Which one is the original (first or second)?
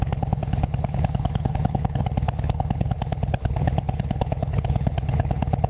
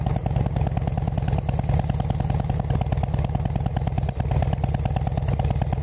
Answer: second